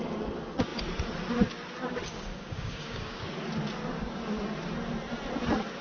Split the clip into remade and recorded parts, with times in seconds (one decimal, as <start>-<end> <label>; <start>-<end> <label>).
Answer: 0.0-2.1 recorded; 2.1-3.2 remade; 3.2-5.8 recorded